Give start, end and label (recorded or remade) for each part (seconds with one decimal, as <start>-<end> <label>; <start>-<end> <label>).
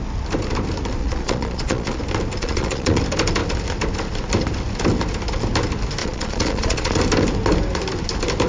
0.0-1.0 recorded; 1.0-2.0 remade; 2.0-2.4 recorded; 2.4-3.0 remade; 3.0-6.0 recorded; 6.0-7.0 remade; 7.0-8.5 recorded